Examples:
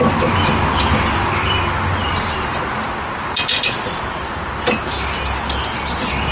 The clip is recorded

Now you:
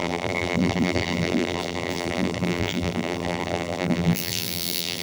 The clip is remade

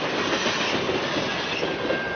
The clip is recorded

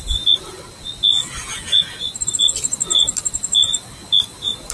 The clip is recorded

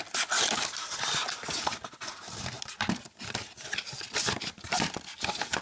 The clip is recorded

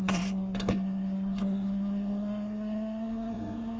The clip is remade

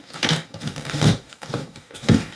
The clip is remade